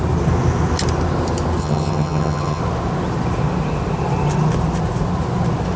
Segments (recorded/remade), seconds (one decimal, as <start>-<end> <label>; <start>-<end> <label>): 0.0-1.6 recorded; 1.6-2.6 remade; 2.6-5.8 recorded